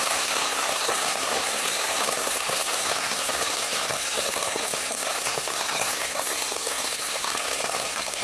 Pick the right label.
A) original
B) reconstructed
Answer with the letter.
B